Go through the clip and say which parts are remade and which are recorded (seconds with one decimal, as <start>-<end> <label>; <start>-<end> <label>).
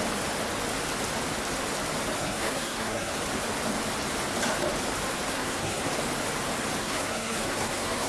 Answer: 0.0-2.2 recorded; 2.2-3.1 remade; 3.1-5.3 recorded; 5.3-5.9 remade; 5.9-6.8 recorded; 6.8-8.1 remade